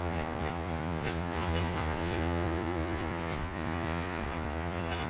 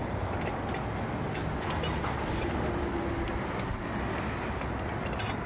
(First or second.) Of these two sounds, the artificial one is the first